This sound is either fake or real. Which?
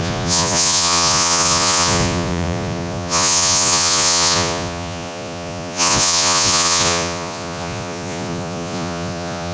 fake